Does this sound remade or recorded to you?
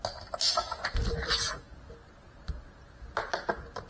recorded